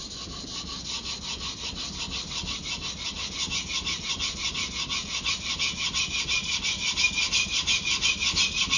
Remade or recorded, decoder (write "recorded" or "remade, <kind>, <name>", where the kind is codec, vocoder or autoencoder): recorded